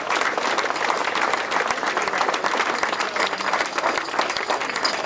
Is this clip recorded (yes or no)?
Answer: yes